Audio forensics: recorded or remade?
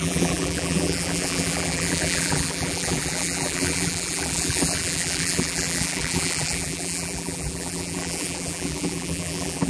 remade